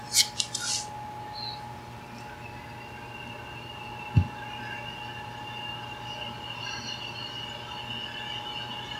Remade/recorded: recorded